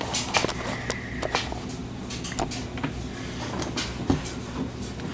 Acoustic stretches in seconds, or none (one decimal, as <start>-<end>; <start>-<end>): 0.0-5.1